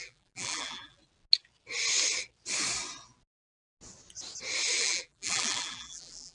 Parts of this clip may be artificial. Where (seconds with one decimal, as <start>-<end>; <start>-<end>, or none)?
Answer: 0.0-1.0; 4.8-6.3